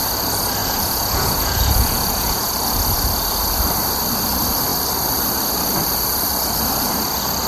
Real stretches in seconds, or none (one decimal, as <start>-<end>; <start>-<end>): 0.0-0.6; 2.5-7.5